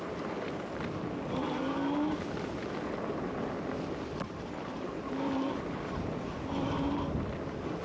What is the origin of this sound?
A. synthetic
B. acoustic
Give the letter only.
B